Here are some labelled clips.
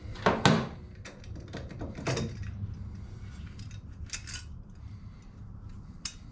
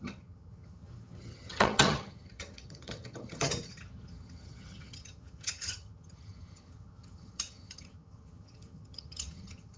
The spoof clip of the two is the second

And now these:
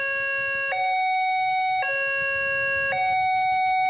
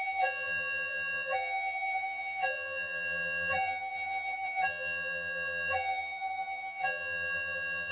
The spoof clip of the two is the second